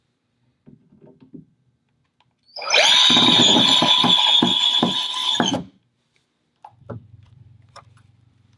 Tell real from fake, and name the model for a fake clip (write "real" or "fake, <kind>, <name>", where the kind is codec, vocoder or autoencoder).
fake, vocoder, BigVGAN v2